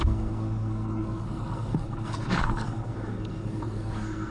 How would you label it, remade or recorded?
remade